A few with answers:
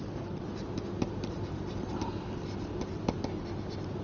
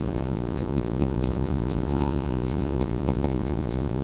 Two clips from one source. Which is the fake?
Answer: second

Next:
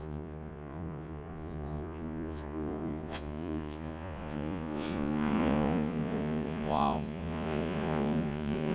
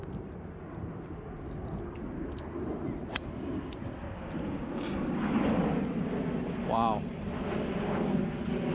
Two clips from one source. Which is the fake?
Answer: first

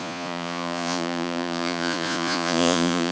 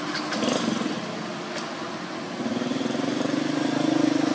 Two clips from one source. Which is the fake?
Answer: first